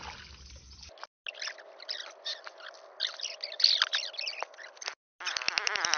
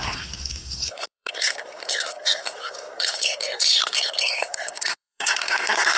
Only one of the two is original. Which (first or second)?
first